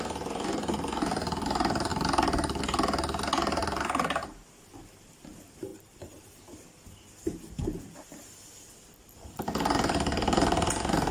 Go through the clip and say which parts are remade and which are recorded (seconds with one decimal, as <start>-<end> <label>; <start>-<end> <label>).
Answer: 0.0-11.1 recorded